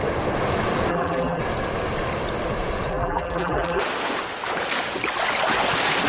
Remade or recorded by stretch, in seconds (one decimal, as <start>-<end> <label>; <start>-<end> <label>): 0.0-0.9 recorded; 0.9-1.4 remade; 1.4-2.9 recorded; 2.9-3.8 remade; 3.8-6.1 recorded

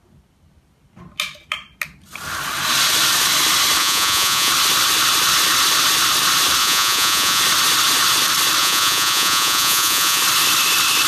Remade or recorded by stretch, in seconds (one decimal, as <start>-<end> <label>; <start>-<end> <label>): 0.0-3.8 recorded; 3.8-4.5 remade; 4.5-6.6 recorded; 6.6-7.4 remade; 7.4-8.6 recorded; 8.6-10.2 remade; 10.2-11.1 recorded